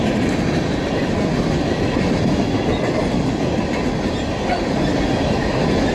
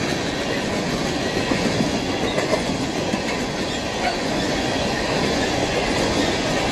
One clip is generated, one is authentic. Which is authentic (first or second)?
first